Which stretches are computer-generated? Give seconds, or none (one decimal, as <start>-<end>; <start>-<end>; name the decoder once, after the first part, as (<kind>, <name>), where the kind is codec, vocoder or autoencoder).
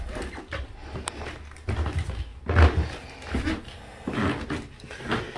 none